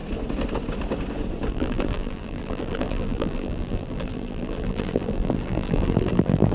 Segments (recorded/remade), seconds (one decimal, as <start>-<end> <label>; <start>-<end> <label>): 0.0-1.5 recorded; 1.5-6.5 remade